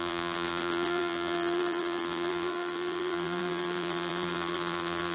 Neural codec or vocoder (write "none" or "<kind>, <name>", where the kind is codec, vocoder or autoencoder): vocoder, BigVGAN v2